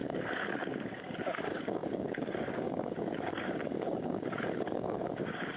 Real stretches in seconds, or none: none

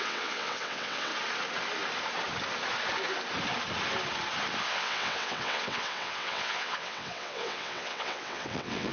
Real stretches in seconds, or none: 1.1-4.7